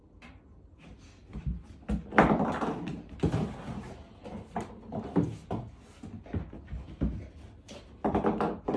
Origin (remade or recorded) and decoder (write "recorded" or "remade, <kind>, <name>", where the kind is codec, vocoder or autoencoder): recorded